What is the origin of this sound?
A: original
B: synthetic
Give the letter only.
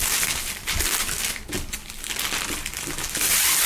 A